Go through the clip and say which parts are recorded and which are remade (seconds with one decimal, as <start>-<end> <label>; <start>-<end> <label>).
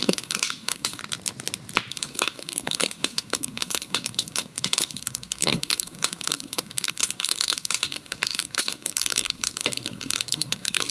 0.0-1.0 remade; 1.0-1.9 recorded; 1.9-10.9 remade